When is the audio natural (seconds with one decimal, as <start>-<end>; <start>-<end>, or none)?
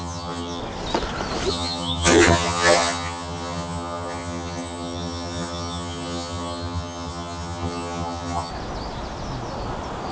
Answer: 0.6-1.5; 8.5-10.1